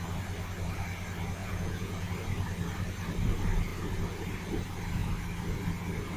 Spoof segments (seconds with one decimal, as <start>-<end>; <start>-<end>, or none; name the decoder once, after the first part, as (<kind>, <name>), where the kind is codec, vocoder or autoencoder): 1.4-2.1 (vocoder, Vocos)